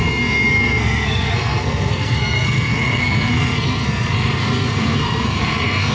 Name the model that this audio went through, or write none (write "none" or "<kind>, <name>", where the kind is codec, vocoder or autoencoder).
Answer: codec, SNAC